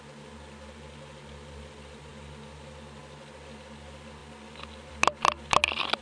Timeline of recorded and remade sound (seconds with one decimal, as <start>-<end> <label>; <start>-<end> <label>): 0.0-6.0 recorded

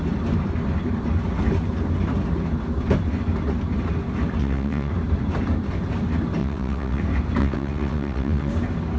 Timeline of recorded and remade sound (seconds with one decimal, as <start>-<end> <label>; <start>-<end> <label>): 0.0-4.4 recorded; 4.4-4.9 remade; 4.9-6.4 recorded; 6.4-7.0 remade; 7.0-7.4 recorded; 7.4-8.5 remade; 8.5-9.0 recorded

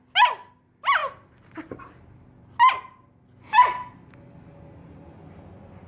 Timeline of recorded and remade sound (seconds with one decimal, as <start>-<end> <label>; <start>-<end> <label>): 0.0-5.9 recorded

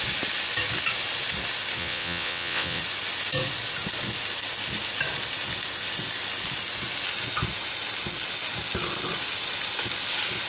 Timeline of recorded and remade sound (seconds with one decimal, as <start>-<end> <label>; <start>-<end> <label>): 0.0-1.8 recorded; 1.8-2.8 remade; 2.8-10.5 recorded

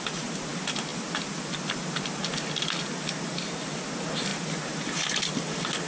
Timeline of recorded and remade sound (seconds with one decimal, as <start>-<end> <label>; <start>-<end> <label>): 0.0-5.9 recorded

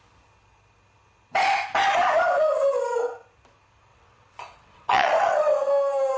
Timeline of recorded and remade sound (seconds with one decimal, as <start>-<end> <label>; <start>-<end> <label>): 0.0-3.9 recorded; 3.9-5.7 remade; 5.7-6.2 recorded

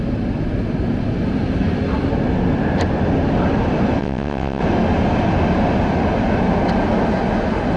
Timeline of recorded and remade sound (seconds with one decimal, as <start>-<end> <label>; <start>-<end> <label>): 0.0-4.0 recorded; 4.0-4.6 remade; 4.6-7.8 recorded